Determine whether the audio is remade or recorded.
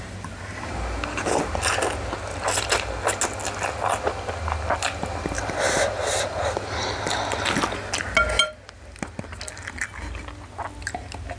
recorded